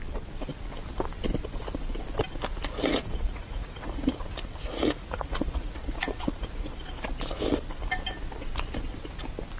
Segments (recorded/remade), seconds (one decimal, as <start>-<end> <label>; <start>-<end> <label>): 0.0-2.8 recorded; 2.8-7.0 remade; 7.0-9.6 recorded